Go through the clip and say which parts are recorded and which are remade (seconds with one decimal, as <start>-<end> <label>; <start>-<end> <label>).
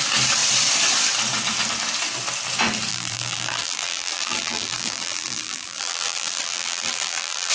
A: 0.0-2.9 recorded; 2.9-7.5 remade